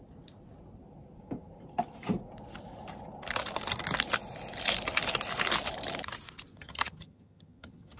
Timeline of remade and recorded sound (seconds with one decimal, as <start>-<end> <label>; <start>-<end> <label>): 0.0-6.5 recorded; 6.5-8.0 remade